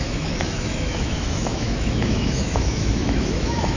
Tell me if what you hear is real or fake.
fake